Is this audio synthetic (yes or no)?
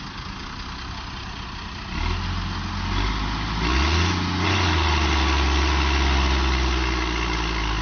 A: no